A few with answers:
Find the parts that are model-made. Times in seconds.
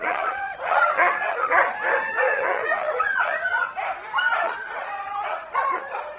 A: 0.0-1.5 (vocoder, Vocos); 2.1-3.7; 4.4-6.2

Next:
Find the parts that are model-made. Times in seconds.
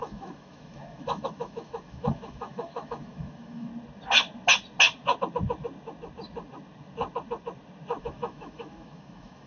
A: 0.0-3.7 (autoencoder, DAC-VAE); 8.0-9.5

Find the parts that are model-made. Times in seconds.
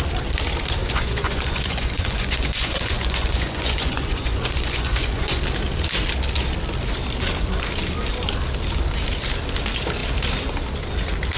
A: 0.8-5.4 (vocoder, Vocos)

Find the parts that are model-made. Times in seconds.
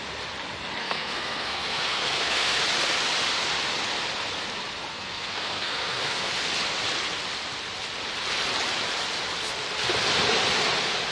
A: 0.8-2.6 (codec, SNAC); 4.9-6.3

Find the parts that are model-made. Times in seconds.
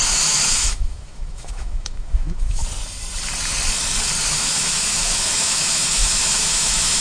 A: 0.0-2.6 (autoencoder, DAC-VAE); 4.3-7.0